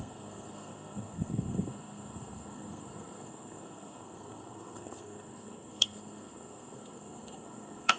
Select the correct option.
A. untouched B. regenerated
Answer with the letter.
B